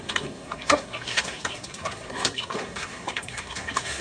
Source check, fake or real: fake